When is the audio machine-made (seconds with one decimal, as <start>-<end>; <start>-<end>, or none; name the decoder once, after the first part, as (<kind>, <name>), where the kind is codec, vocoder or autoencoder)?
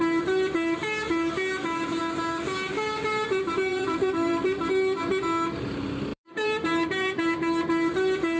3.7-4.7 (vocoder, BigVGAN v2); 6.1-7.2